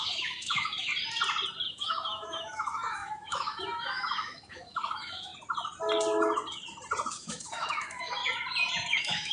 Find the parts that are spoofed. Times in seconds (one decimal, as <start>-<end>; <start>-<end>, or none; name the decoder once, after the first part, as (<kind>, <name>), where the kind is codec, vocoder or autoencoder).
0.0-0.9 (autoencoder, DAC-VAE); 1.7-5.3; 7.1-8.2; 8.9-9.3